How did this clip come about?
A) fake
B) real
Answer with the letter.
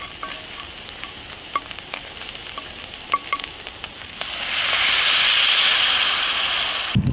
B